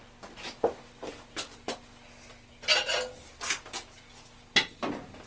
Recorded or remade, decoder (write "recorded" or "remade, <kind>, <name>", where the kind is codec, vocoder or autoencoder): recorded